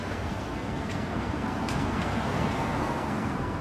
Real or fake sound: fake